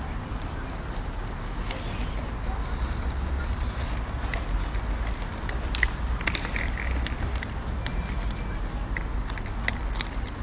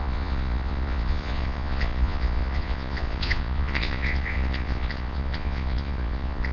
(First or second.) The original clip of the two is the first